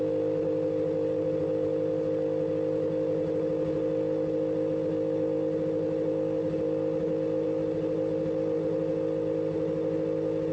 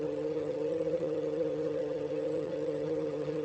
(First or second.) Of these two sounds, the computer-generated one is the second